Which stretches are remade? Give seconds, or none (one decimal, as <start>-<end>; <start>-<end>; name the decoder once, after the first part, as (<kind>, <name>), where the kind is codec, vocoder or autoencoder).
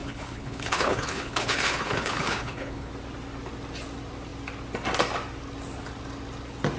0.0-2.9 (codec, HILCodec)